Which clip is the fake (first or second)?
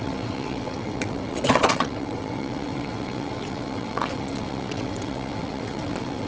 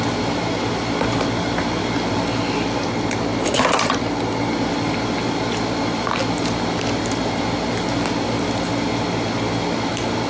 first